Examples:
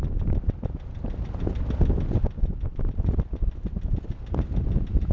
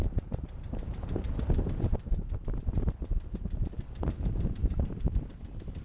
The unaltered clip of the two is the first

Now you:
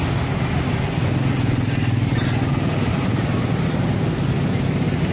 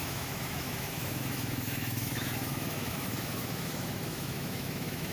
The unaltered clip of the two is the first